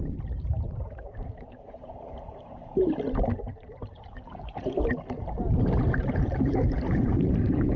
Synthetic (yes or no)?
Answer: yes